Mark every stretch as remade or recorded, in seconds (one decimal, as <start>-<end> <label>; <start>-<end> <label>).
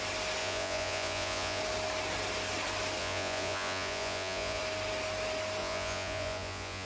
0.0-0.4 recorded; 0.4-1.6 remade; 1.6-3.0 recorded; 3.0-4.6 remade; 4.6-5.6 recorded; 5.6-6.9 remade